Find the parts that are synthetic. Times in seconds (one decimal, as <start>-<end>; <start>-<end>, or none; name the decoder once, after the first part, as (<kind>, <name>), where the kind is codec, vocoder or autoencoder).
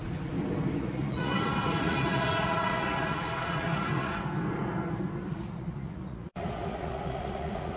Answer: 0.8-4.2 (vocoder, Vocos); 5.3-7.8